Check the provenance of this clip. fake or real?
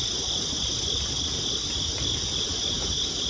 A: real